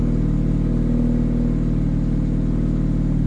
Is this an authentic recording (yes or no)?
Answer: yes